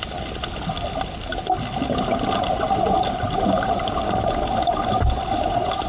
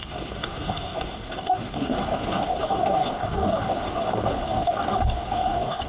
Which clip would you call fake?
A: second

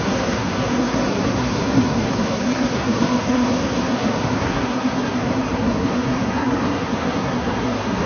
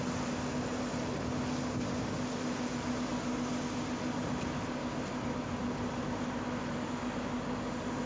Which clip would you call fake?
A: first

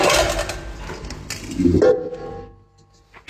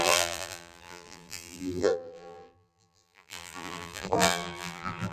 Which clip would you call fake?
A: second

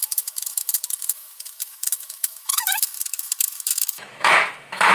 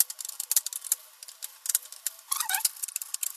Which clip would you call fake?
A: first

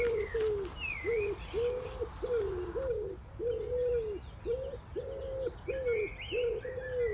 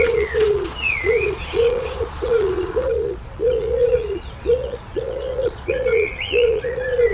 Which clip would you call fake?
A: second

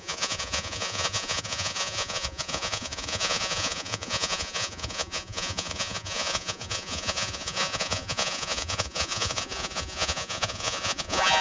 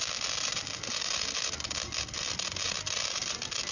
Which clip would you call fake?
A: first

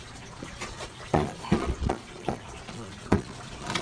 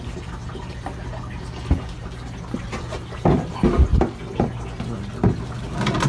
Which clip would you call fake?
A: first